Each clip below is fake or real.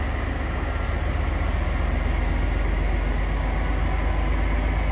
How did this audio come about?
real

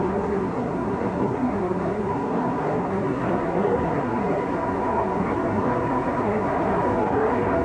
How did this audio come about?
fake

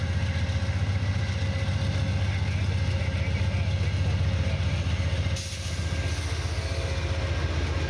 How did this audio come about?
real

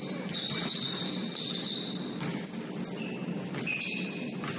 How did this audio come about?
real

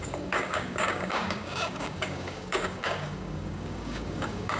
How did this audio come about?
fake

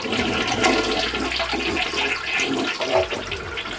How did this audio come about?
real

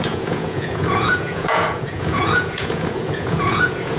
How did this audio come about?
fake